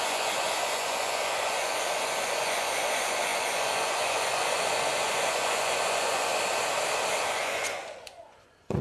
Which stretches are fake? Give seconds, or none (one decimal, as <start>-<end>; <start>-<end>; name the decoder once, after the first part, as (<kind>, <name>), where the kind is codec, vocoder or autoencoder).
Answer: 0.0-6.3 (vocoder, Vocos); 7.2-8.8